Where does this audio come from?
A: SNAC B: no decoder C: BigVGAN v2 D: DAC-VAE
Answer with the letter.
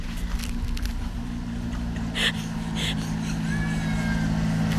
B